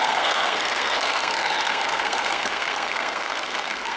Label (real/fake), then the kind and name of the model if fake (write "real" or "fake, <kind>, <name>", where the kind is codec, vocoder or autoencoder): fake, codec, SNAC